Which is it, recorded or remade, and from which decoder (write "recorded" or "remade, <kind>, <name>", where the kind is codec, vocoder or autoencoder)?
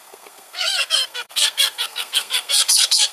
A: remade, codec, SNAC